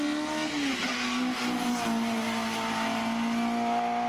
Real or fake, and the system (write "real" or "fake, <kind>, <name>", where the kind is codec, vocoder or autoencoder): real